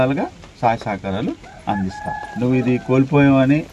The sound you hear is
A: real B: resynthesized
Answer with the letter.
A